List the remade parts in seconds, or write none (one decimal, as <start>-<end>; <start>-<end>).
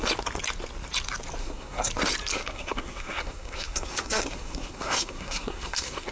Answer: 1.4-1.9; 2.3-6.1